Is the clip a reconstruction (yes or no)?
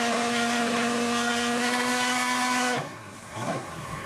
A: yes